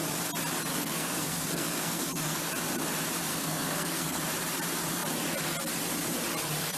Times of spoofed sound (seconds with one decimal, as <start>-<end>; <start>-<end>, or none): 0.7-2.5; 3.3-4.2